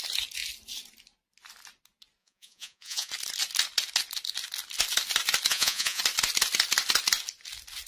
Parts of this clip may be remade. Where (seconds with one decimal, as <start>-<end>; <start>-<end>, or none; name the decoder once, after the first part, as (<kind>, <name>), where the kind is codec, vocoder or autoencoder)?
2.2-3.1 (vocoder, Vocos); 5.5-6.0